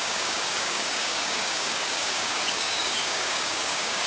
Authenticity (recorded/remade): remade